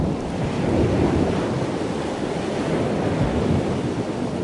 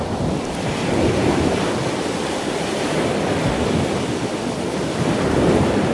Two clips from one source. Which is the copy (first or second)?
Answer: second